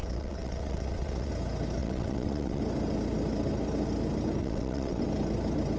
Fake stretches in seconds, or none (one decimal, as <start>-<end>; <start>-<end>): 0.0-1.3; 1.8-2.6; 4.4-5.0